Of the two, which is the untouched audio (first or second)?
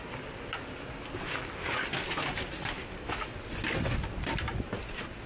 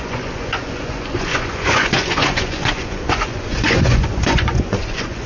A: first